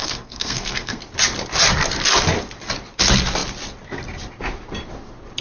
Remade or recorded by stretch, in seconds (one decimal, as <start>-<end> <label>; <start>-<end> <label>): 0.0-1.0 remade; 1.0-5.4 recorded

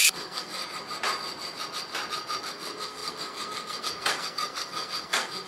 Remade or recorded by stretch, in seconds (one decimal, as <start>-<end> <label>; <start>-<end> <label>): 0.0-0.6 remade; 0.6-2.4 recorded; 2.4-5.5 remade